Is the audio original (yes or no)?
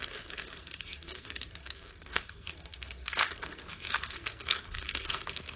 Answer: no